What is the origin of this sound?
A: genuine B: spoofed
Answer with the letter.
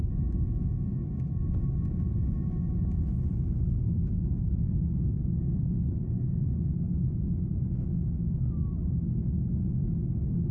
A